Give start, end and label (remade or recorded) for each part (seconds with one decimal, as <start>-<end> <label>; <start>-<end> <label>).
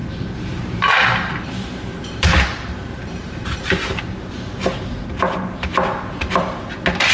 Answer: 0.0-4.0 remade; 4.0-7.1 recorded